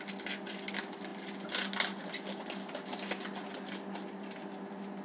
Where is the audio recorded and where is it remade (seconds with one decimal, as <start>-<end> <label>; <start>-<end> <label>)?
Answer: 0.0-5.0 recorded